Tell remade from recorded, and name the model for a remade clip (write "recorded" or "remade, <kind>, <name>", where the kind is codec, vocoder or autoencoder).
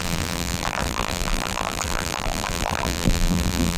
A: remade, vocoder, BigVGAN v2